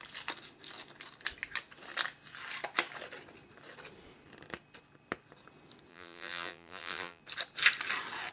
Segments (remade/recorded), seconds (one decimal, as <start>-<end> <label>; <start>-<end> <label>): 0.0-5.9 recorded; 5.9-7.2 remade; 7.2-8.3 recorded